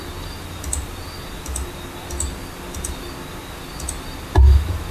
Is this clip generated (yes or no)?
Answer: no